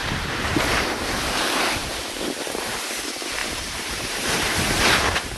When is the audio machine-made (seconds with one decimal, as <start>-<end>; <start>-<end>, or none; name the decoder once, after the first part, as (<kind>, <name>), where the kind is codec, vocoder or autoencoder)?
0.0-2.9 (vocoder, BigVGAN v2); 3.4-4.8